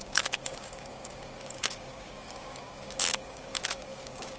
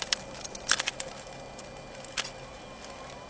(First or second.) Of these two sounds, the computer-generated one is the first